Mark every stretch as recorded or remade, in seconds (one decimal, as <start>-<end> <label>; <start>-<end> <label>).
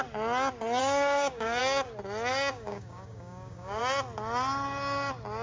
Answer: 0.0-0.8 recorded; 0.8-1.6 remade; 1.6-2.3 recorded; 2.3-3.8 remade; 3.8-5.4 recorded